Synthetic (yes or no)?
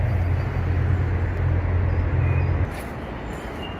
no